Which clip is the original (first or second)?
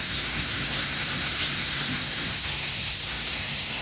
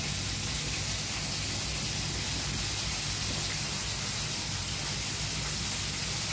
second